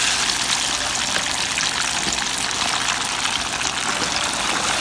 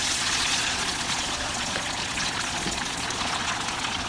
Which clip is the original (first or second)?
first